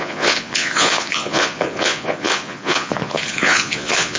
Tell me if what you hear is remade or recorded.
remade